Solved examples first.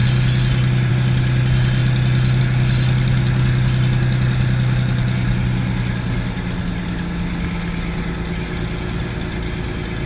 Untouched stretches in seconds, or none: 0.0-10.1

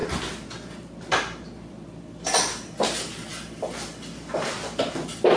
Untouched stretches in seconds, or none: 0.0-5.4

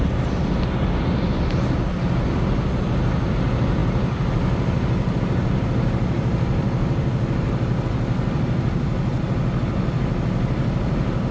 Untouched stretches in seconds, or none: 0.0-11.3

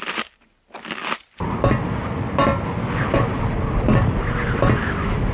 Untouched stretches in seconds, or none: 0.0-5.3

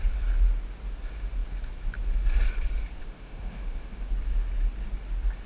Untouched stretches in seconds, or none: 0.0-3.0; 4.0-5.5

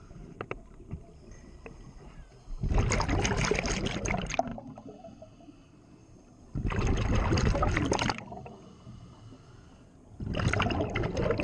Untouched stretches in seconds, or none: 0.0-11.4